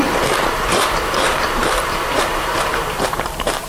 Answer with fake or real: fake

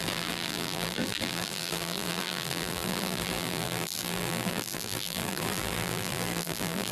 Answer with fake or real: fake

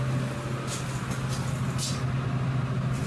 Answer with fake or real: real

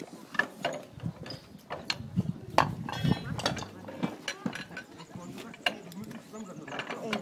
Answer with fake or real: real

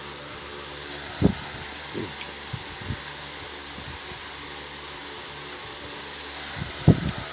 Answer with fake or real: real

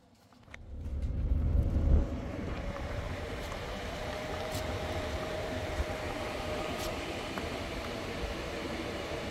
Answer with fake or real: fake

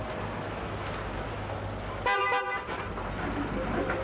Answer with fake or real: real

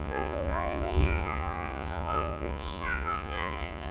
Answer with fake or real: fake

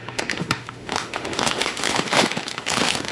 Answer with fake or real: fake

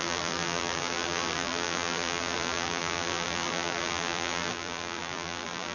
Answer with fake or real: fake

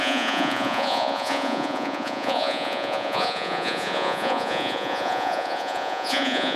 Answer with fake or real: fake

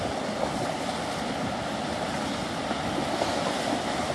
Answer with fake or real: real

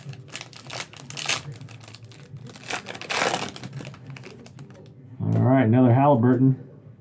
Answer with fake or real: real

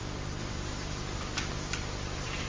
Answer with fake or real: real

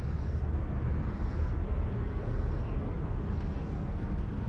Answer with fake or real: fake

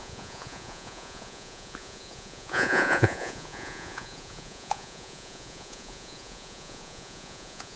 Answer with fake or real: fake